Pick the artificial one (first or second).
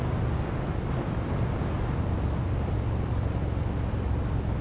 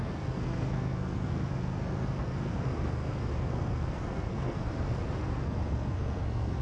second